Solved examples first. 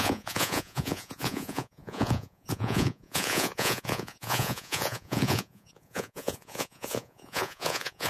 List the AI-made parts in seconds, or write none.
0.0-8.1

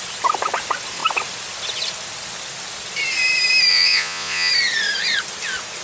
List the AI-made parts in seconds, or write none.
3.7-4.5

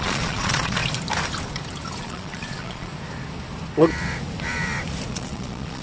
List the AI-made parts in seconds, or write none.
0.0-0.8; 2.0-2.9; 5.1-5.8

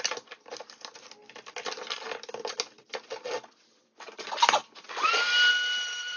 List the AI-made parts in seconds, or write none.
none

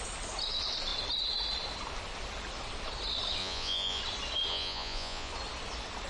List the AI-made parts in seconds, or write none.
3.4-4.0; 4.5-5.3

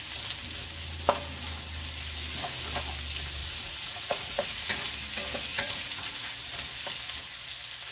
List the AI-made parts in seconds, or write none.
3.4-4.7; 5.5-6.3

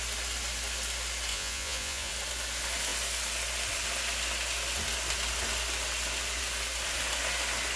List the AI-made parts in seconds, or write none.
1.3-2.1